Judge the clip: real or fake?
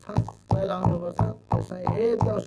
fake